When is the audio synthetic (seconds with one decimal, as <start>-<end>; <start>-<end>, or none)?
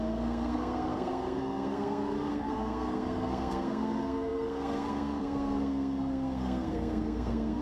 0.0-7.6